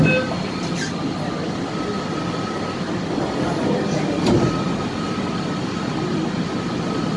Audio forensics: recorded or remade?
recorded